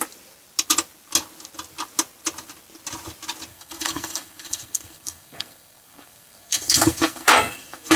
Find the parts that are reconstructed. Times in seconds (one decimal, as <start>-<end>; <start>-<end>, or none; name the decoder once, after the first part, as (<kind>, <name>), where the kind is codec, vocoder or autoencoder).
3.5-8.0 (codec, SNAC)